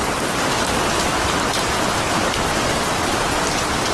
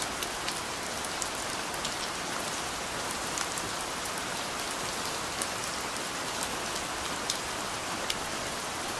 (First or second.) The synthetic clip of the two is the first